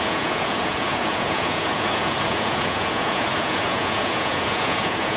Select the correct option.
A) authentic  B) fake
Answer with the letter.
B